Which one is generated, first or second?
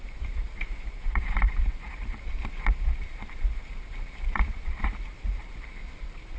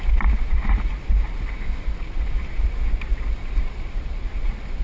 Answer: first